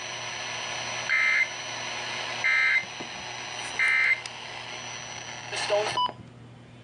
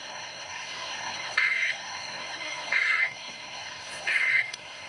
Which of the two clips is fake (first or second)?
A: second